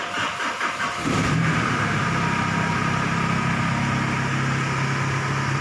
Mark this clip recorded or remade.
recorded